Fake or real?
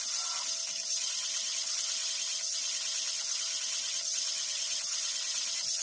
real